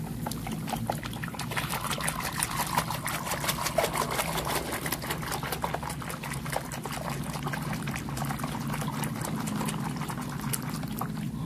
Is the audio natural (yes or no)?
yes